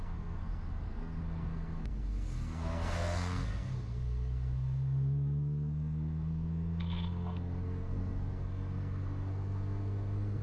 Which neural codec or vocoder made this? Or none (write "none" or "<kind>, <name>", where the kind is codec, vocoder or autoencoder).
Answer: codec, SNAC